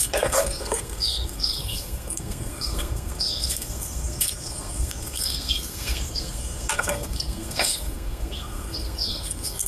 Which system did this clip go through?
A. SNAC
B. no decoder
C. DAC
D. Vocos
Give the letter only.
A